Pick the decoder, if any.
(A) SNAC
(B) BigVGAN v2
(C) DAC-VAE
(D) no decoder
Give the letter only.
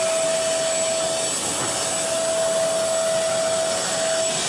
D